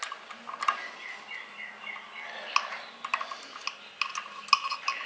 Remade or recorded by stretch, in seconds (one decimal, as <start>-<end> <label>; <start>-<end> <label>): 0.0-5.1 recorded

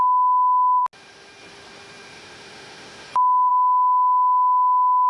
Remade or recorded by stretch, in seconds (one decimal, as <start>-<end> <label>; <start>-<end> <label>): 0.0-2.1 recorded; 2.1-3.5 remade; 3.5-5.1 recorded

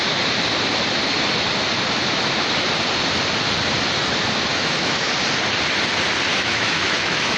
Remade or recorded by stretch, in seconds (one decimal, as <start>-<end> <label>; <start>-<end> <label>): 0.0-4.5 recorded; 4.5-5.1 remade; 5.1-6.3 recorded; 6.3-7.4 remade

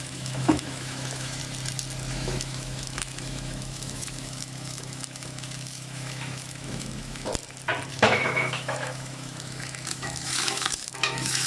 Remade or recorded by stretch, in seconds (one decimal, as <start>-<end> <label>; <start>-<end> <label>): 0.0-1.4 remade; 1.4-2.1 recorded; 2.1-7.3 remade; 7.3-7.9 recorded; 7.9-11.5 remade

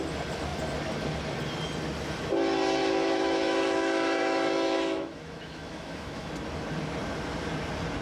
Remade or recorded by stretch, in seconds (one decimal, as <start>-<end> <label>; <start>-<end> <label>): 0.0-2.8 recorded; 2.8-6.3 remade; 6.3-8.0 recorded

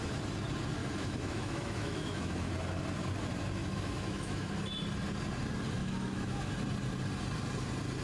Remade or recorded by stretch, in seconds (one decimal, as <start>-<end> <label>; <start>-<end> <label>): 0.0-0.8 recorded; 0.8-2.5 remade; 2.5-3.6 recorded; 3.6-4.5 remade; 4.5-5.8 recorded; 5.8-6.5 remade; 6.5-8.0 recorded

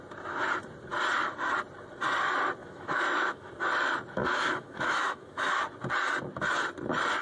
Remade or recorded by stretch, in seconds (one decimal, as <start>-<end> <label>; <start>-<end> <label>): 0.0-2.6 recorded; 2.6-3.5 remade; 3.5-4.2 recorded; 4.2-5.6 remade; 5.6-7.2 recorded

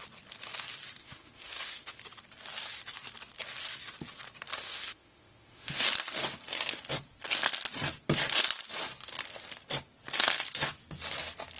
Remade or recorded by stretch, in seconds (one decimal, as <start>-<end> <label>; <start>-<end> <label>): 0.0-1.0 recorded; 1.0-2.0 remade; 2.0-4.5 recorded; 4.5-5.8 remade; 5.8-11.6 recorded